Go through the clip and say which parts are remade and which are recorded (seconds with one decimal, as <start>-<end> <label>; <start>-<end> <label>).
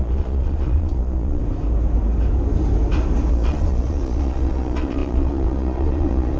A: 0.0-1.4 remade; 1.4-3.3 recorded; 3.3-6.4 remade